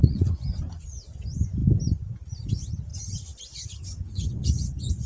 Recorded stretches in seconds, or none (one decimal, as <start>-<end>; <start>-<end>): 1.0-2.9